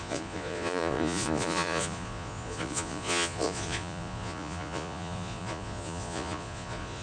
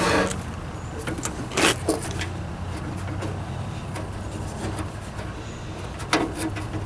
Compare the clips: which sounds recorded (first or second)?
second